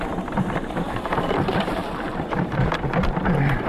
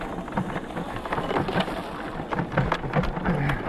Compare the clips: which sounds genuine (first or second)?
second